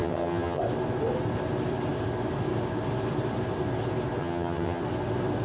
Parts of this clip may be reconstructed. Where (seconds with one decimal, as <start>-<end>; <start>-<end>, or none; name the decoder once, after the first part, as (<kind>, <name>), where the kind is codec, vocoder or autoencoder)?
0.0-0.6 (vocoder, HiFi-GAN); 4.2-4.8